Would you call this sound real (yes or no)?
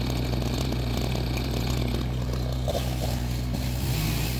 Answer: yes